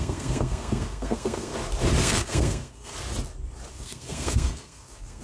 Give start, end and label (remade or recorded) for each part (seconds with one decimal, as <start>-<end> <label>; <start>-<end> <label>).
0.0-1.5 remade; 1.5-2.0 recorded; 2.0-2.9 remade; 2.9-3.7 recorded; 3.7-5.2 remade

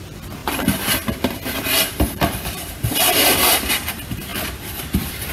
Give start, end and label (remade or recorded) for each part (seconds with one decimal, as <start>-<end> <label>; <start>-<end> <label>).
0.0-5.3 remade

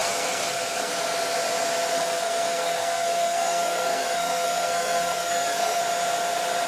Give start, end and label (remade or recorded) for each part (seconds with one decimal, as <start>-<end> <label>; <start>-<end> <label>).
0.0-0.9 remade; 0.9-1.9 recorded; 1.9-5.8 remade; 5.8-6.7 recorded